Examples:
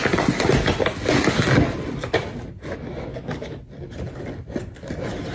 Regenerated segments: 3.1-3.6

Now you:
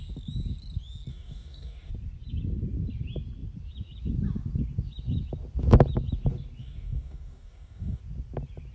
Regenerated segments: 1.1-1.9; 6.6-8.0